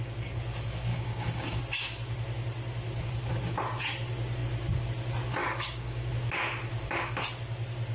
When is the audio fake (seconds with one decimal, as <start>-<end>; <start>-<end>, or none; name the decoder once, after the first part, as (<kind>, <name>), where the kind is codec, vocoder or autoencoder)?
0.9-1.6 (codec, DAC); 5.4-6.1